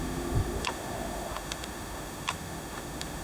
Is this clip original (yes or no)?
no